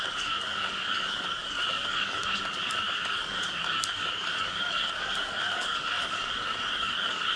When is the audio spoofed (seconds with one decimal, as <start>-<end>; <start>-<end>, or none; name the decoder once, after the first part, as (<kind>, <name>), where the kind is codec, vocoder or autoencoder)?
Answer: 0.0-7.4 (codec, DAC)